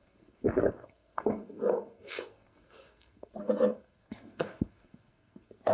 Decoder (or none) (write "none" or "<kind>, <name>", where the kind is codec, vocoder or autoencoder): codec, SNAC